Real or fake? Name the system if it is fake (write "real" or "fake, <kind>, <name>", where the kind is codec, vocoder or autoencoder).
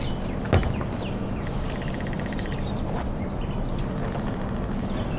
real